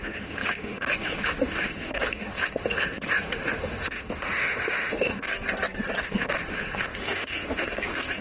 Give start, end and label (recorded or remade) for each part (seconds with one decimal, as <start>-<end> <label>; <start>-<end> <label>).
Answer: 0.0-5.3 remade; 5.3-6.0 recorded; 6.0-8.2 remade